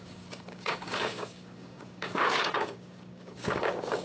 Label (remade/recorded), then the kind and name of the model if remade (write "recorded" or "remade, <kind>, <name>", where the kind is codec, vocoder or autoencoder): remade, codec, DAC